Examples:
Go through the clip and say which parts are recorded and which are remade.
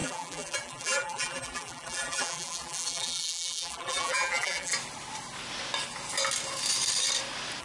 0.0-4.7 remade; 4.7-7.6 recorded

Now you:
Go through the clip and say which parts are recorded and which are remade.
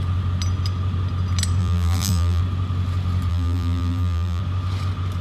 0.0-1.6 recorded; 1.6-2.4 remade; 2.4-3.3 recorded; 3.3-4.4 remade; 4.4-5.2 recorded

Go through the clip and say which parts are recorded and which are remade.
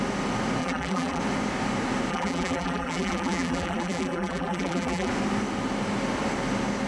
0.0-0.6 recorded; 0.6-1.2 remade; 1.2-2.1 recorded; 2.1-5.1 remade; 5.1-6.9 recorded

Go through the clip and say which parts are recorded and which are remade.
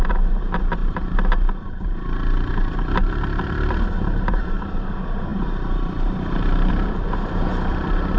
0.0-8.2 remade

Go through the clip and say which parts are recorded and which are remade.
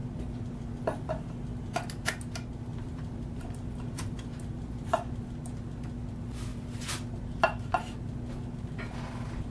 0.0-1.1 remade; 1.1-2.7 recorded; 2.7-5.2 remade; 5.2-9.5 recorded